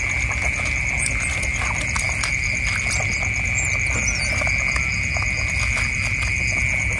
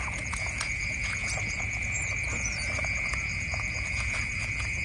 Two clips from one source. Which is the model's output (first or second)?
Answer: second